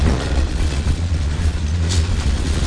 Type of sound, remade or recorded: remade